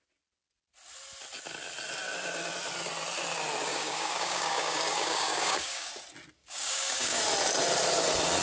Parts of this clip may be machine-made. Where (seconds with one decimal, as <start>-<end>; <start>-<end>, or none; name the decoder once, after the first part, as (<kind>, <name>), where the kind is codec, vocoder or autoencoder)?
3.7-5.9 (codec, DAC); 6.4-7.2